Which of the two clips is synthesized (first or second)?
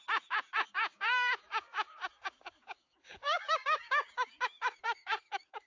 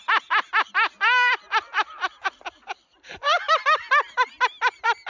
first